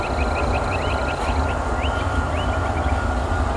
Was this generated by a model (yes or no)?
no